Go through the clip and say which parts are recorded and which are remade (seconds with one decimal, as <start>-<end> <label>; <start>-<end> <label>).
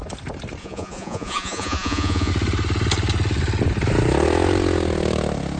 0.0-0.6 recorded; 0.6-2.3 remade; 2.3-5.6 recorded